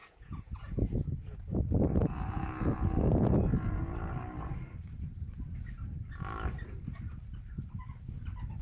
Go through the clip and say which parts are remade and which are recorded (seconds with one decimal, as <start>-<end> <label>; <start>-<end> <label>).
0.0-1.6 remade; 1.6-2.0 recorded; 2.0-3.8 remade; 3.8-8.6 recorded